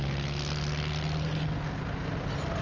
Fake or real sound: real